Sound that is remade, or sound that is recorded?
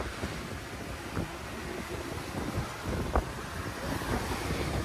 recorded